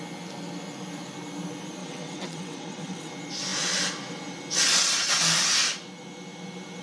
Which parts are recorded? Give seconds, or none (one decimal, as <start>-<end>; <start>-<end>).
0.0-1.8; 3.1-6.8